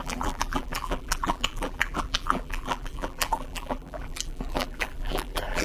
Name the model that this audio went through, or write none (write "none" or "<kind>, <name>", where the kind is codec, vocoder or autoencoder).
vocoder, BigVGAN v2